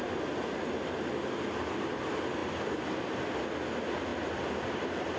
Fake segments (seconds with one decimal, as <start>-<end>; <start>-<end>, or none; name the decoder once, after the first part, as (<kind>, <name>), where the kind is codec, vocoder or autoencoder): none